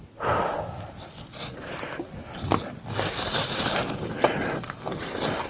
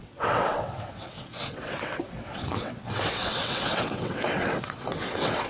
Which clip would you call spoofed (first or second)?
second